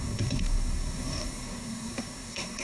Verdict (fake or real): fake